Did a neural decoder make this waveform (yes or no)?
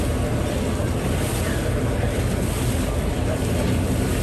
no